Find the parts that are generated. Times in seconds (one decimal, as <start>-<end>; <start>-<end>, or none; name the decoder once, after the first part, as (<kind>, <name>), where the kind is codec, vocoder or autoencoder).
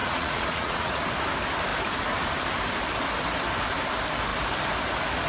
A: 0.0-1.0 (vocoder, Vocos)